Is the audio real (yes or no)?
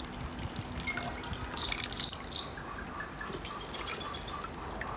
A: yes